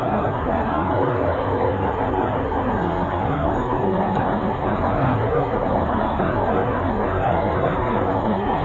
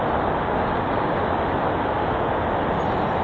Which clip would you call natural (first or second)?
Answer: second